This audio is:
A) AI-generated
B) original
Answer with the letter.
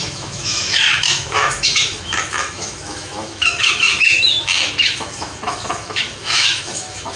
A